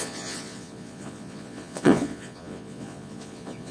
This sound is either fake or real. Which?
fake